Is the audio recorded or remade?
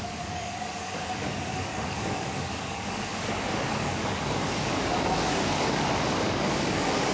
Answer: remade